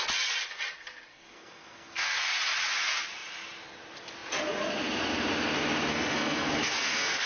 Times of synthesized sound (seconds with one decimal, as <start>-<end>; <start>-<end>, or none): 1.1-2.2; 5.9-7.3